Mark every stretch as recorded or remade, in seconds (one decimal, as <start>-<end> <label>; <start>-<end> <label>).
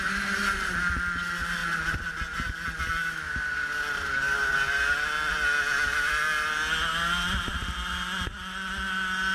0.0-9.3 recorded